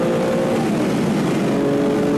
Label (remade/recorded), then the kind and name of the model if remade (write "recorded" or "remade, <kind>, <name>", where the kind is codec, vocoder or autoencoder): recorded